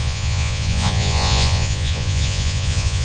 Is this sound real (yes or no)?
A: no